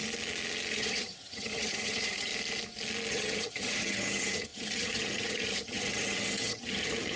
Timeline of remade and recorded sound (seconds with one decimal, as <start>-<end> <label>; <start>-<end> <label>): 0.0-0.7 recorded; 0.7-2.3 remade; 2.3-3.1 recorded; 3.1-7.2 remade

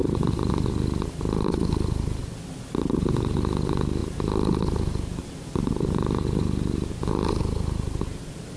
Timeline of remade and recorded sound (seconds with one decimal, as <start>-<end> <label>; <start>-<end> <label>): 0.0-2.2 remade; 2.2-2.8 recorded; 2.8-4.0 remade; 4.0-7.4 recorded; 7.4-8.6 remade

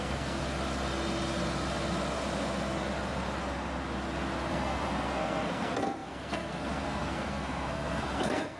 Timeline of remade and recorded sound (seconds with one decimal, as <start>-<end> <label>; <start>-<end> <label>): 0.0-0.4 remade; 0.4-4.5 recorded; 4.5-8.6 remade

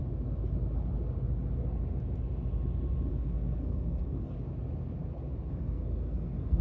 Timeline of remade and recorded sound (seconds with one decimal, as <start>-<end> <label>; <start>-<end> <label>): 0.0-3.1 recorded; 3.1-4.3 remade; 4.3-5.5 recorded; 5.5-6.6 remade

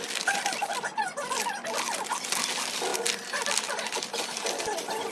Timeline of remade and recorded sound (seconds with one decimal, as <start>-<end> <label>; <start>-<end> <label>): 0.0-5.1 recorded

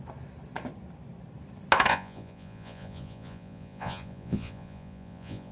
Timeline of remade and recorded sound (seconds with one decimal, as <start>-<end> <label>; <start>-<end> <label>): 0.0-1.9 recorded; 1.9-5.5 remade

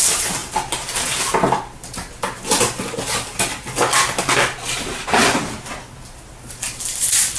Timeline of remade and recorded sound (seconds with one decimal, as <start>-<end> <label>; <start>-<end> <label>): 0.0-7.4 recorded